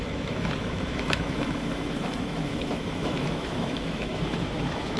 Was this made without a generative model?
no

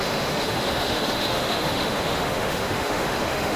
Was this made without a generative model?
no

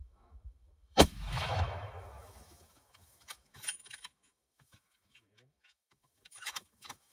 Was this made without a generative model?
no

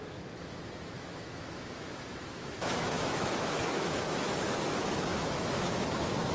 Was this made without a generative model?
no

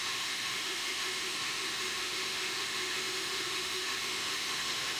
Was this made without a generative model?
no